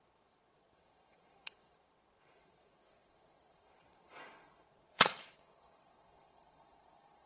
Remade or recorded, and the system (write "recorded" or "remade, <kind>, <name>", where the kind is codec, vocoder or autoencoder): remade, vocoder, Vocos